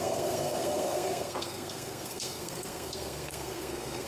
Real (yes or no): no